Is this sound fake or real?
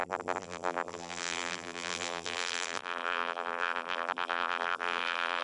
fake